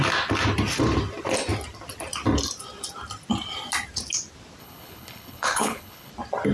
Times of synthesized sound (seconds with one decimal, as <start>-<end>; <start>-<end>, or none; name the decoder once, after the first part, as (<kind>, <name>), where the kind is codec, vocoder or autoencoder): 4.6-6.1 (codec, HILCodec)